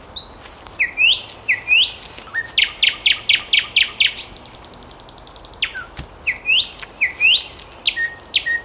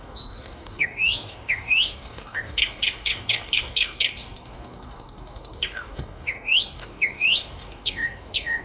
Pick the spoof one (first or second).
second